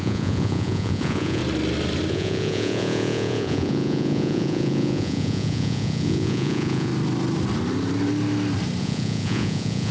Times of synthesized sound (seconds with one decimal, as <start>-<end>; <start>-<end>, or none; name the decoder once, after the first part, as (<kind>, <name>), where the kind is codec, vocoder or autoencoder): 0.0-1.4 (vocoder, Vocos); 2.1-6.9; 8.8-9.9